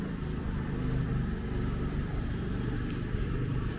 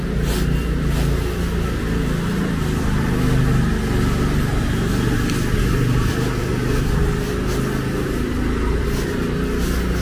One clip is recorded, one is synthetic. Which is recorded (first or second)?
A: second